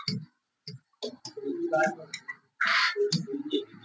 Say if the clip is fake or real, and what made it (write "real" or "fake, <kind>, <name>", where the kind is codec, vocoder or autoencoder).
real